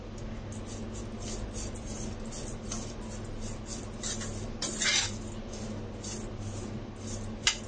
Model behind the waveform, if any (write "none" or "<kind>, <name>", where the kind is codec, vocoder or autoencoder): none